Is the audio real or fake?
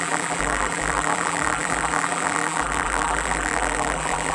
fake